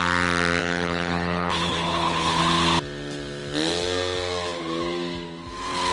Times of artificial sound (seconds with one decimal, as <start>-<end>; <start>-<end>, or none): 0.6-2.4